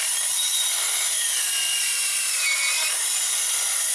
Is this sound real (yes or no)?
no